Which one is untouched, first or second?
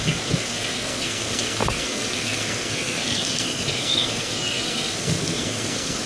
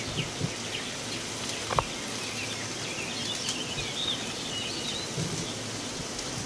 second